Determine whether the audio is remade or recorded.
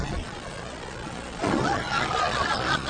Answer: remade